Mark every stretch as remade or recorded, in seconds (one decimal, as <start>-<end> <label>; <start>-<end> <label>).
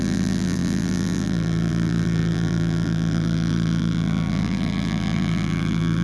0.0-6.0 remade